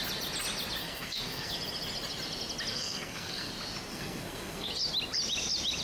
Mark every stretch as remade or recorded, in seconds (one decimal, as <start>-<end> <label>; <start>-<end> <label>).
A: 0.0-0.8 recorded; 0.8-1.5 remade; 1.5-2.7 recorded; 2.7-3.5 remade; 3.5-3.9 recorded; 3.9-4.7 remade; 4.7-5.8 recorded